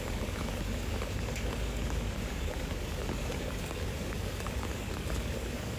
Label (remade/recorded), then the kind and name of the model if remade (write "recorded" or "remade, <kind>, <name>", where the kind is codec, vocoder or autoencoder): remade, codec, DAC